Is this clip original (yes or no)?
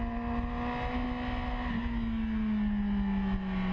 yes